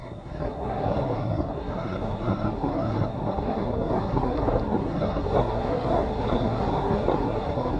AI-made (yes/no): yes